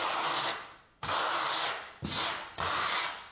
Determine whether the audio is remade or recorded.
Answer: recorded